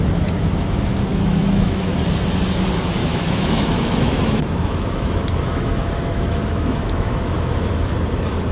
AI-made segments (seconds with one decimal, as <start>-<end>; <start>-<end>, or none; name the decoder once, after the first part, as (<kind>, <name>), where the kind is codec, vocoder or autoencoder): 1.1-1.9 (autoencoder, DAC-VAE); 3.0-7.9